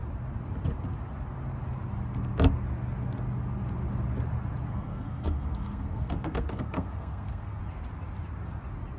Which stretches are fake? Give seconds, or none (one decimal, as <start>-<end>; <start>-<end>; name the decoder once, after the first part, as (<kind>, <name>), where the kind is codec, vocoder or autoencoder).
4.7-7.6 (codec, SNAC)